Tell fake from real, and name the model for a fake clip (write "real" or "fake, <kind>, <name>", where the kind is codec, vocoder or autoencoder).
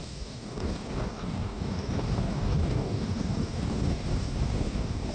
fake, codec, DAC